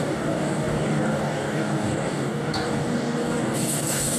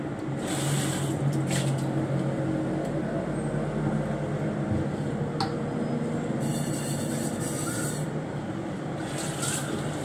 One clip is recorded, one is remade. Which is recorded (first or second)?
second